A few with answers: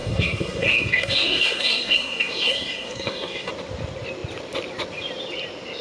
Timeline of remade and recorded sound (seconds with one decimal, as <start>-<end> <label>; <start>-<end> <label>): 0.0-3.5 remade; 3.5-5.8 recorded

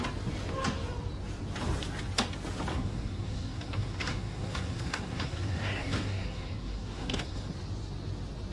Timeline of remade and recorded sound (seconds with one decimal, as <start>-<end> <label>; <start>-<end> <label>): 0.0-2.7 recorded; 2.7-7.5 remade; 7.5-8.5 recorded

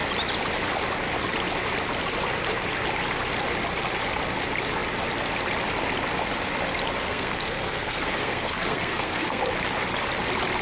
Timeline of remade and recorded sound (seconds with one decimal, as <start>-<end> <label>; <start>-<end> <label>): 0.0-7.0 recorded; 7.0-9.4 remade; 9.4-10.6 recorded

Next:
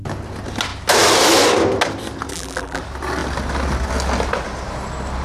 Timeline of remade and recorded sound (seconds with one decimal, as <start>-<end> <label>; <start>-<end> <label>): 0.0-2.3 recorded; 2.3-2.8 remade; 2.8-5.2 recorded

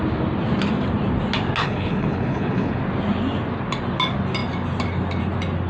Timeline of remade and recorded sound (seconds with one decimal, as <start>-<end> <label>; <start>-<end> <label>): 0.0-1.6 recorded; 1.6-2.8 remade; 2.8-5.7 recorded

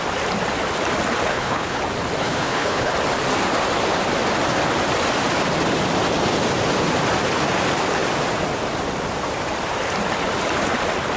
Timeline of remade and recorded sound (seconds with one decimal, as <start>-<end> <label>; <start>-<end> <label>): 0.0-1.3 recorded; 1.3-1.8 remade; 1.8-2.2 recorded; 2.2-2.9 remade; 2.9-11.2 recorded

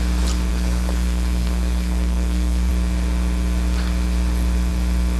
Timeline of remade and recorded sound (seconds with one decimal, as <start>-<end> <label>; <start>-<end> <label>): 0.0-0.5 recorded; 0.5-2.7 remade; 2.7-5.2 recorded